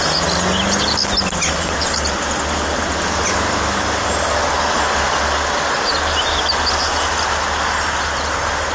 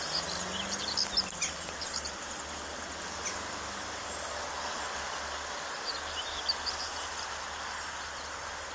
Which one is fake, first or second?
second